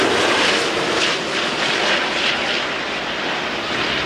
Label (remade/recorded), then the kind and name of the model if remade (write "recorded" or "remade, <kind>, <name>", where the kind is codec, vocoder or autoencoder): recorded